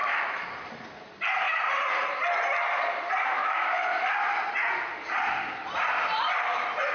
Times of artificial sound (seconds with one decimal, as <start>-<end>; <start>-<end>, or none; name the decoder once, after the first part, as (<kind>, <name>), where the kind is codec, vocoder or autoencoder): 0.0-0.5 (autoencoder, DAC-VAE); 3.4-4.1